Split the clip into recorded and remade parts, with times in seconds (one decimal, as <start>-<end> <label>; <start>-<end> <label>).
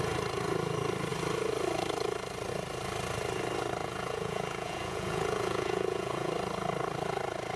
0.0-3.8 recorded; 3.8-6.3 remade; 6.3-7.6 recorded